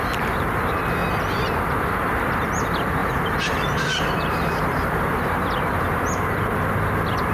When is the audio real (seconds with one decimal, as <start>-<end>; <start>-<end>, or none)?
0.0-3.0; 6.0-7.3